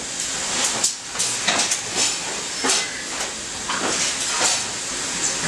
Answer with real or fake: real